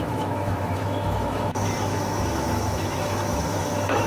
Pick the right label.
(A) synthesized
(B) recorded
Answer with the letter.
A